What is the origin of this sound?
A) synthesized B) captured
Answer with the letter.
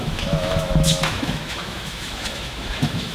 A